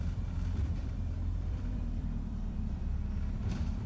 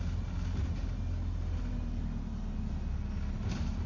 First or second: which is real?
second